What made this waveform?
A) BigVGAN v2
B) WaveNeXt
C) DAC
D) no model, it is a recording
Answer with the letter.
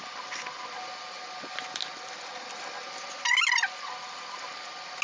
D